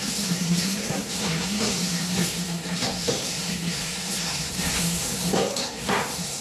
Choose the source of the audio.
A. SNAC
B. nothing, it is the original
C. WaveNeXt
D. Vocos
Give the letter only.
A